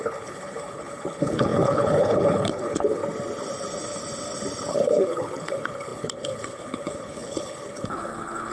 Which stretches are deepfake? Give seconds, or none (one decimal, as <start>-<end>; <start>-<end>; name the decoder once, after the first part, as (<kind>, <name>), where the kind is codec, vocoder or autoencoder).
0.0-3.0 (codec, HILCodec); 4.7-8.5